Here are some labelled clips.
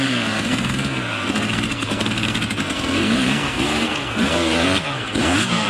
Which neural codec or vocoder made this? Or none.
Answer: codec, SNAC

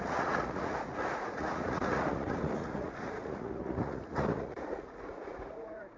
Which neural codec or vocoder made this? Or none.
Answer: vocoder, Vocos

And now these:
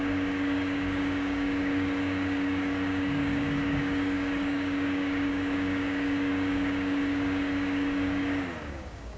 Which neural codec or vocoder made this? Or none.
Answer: codec, DAC